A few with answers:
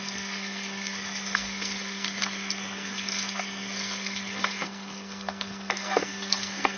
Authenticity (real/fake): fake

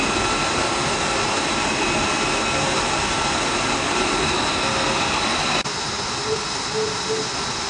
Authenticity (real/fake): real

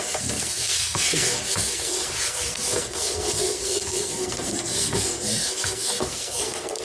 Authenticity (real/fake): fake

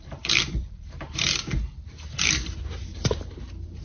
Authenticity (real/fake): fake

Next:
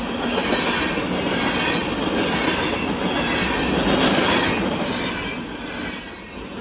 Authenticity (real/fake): real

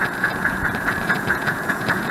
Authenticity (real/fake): fake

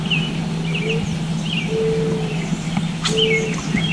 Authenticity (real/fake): real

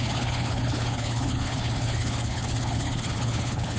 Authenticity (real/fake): fake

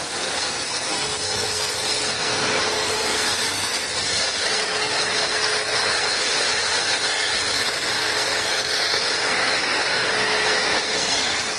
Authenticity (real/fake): fake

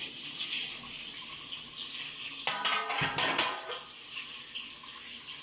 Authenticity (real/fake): real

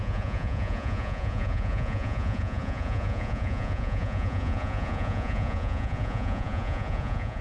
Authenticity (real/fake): fake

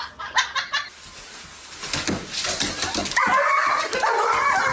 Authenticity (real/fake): real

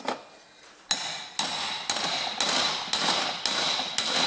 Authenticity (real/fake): real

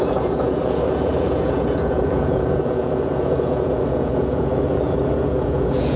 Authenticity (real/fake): fake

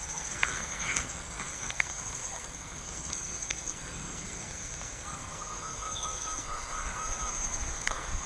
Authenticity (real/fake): fake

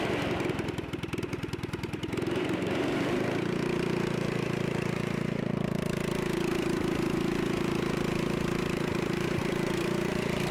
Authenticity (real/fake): fake